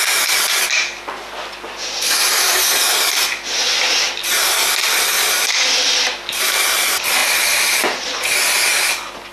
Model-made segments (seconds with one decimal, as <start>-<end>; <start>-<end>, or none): none